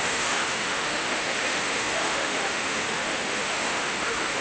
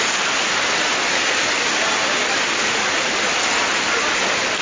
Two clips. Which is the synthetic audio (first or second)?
first